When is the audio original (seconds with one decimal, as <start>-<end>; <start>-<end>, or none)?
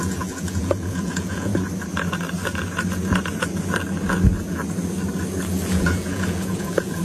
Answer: 1.5-5.7